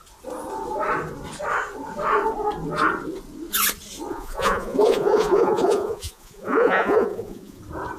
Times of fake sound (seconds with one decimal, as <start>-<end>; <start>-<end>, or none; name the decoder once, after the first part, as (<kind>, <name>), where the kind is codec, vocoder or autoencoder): 4.1-7.6 (vocoder, Vocos)